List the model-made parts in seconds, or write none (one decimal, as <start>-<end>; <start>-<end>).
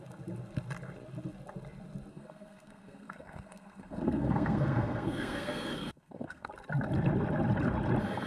2.1-6.5